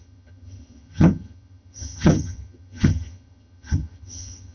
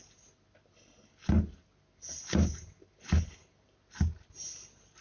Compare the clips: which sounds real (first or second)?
second